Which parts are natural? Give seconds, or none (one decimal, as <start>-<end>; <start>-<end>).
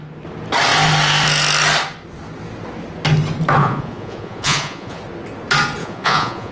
0.0-3.6; 5.0-5.8